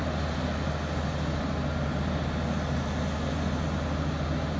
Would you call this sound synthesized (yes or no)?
no